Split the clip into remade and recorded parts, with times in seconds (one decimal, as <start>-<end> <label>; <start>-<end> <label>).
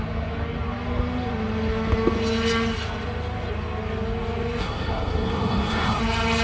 0.0-4.6 recorded; 4.6-6.0 remade; 6.0-6.4 recorded